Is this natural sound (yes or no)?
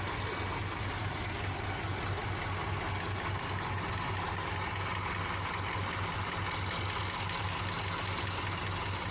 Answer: yes